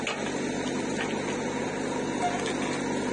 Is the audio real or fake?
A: real